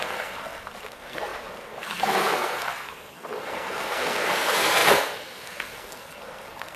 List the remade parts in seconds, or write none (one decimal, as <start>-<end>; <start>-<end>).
0.0-6.8